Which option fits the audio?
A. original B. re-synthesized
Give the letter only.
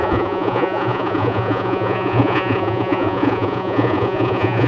B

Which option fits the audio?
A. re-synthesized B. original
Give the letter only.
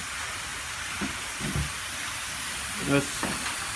B